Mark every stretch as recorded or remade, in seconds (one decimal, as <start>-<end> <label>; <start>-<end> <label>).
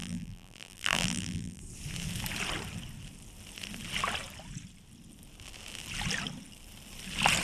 0.0-1.6 remade; 1.6-7.4 recorded